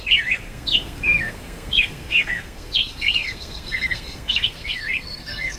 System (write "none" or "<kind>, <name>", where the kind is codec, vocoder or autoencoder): codec, SNAC